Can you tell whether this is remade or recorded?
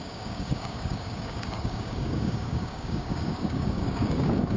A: remade